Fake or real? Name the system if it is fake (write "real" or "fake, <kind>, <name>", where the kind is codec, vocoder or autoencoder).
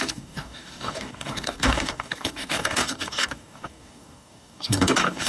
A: fake, codec, DAC